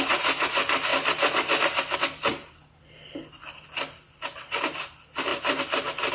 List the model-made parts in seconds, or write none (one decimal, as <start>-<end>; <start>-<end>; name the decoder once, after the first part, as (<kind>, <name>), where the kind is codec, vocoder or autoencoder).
none